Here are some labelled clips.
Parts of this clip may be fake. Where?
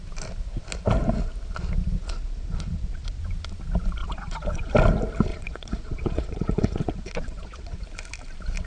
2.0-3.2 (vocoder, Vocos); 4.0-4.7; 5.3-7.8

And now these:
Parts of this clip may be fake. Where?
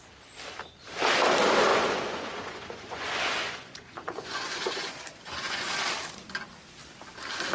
1.7-5.7 (vocoder, Vocos)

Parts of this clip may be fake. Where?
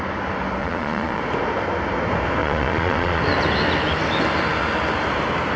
0.6-1.2 (vocoder, Vocos); 2.4-3.2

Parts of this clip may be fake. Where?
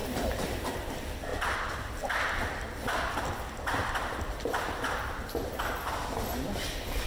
none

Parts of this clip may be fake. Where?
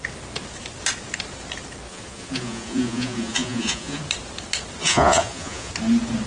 1.9-4.0 (vocoder, Vocos); 4.8-5.7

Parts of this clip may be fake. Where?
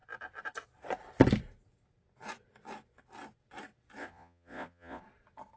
4.0-5.0 (vocoder, Vocos)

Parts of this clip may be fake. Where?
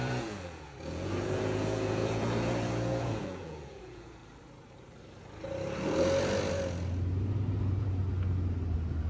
0.0-4.2 (vocoder, Vocos); 7.6-8.0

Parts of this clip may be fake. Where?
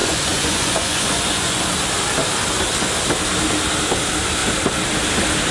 0.0-1.6 (vocoder, Vocos)